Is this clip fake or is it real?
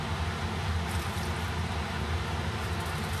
real